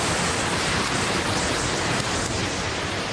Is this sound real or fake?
real